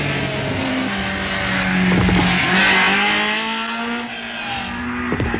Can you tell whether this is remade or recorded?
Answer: recorded